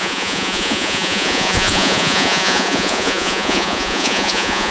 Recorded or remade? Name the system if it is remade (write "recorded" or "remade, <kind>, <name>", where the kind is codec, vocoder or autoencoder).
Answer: remade, vocoder, Vocos